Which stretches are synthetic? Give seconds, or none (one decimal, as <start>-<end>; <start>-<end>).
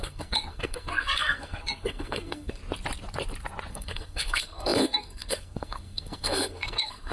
0.0-2.6; 3.7-7.1